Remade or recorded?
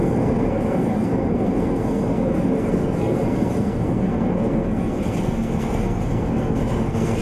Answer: remade